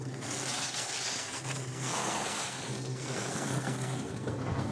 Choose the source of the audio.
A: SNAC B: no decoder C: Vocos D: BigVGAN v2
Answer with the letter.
A